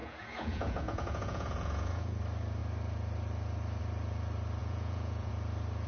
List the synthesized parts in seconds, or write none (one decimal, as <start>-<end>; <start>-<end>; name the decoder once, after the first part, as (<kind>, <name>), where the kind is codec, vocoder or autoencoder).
0.0-2.2 (vocoder, Vocos); 4.6-5.3